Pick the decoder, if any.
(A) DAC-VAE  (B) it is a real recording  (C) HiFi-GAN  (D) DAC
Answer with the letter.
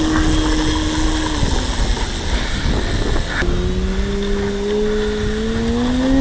B